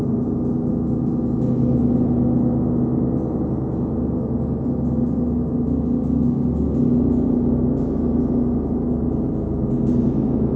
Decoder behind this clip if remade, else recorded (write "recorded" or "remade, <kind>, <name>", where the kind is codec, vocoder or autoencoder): recorded